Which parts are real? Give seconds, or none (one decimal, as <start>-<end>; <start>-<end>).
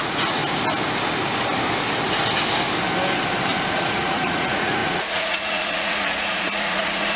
0.4-3.7